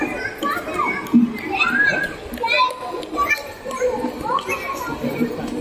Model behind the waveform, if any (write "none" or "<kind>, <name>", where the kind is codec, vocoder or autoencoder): none